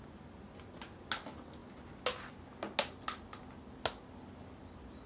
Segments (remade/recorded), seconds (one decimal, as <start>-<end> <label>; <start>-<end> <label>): 0.0-5.1 recorded